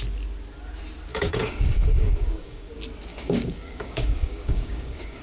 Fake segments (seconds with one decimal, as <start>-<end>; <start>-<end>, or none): 1.1-2.7; 3.1-5.2